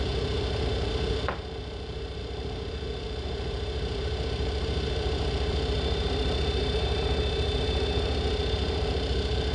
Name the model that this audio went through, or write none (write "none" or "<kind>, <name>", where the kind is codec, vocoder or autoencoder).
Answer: vocoder, BigVGAN v2